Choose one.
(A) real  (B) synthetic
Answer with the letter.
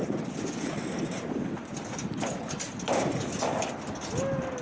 A